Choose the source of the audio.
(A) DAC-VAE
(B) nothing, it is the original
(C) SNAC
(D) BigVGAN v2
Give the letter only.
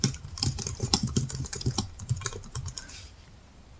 D